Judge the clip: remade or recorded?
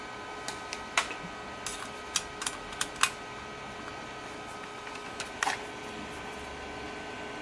recorded